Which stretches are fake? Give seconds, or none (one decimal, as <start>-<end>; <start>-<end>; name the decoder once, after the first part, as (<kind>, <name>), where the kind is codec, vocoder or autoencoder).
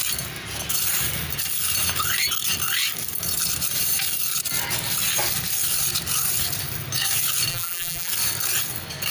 7.5-8.1 (vocoder, BigVGAN v2)